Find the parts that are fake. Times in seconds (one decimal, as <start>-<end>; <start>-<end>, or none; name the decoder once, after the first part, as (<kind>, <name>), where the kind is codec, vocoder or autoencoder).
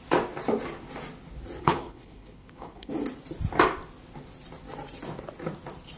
1.6-2.9 (codec, HILCodec)